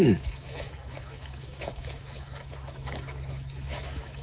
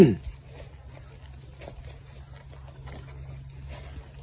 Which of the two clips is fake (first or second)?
first